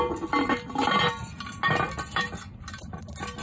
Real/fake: real